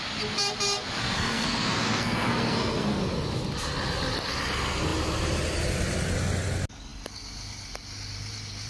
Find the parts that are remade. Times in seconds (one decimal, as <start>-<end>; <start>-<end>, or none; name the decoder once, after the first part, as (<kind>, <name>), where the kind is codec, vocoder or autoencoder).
1.0-3.0 (codec, SNAC)